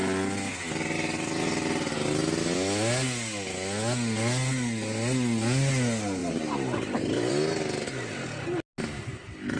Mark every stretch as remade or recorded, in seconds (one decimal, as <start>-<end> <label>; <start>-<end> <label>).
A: 0.0-9.6 recorded